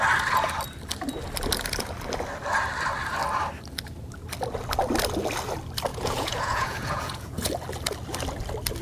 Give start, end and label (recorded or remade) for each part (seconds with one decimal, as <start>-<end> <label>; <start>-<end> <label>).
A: 0.0-5.9 recorded; 5.9-7.5 remade; 7.5-8.8 recorded